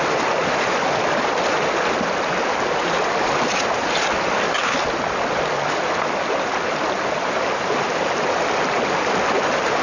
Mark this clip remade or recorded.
recorded